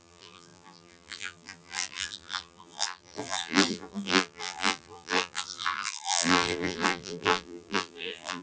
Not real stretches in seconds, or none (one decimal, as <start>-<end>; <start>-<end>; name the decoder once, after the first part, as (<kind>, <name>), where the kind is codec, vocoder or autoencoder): 0.0-8.4 (vocoder, BigVGAN v2)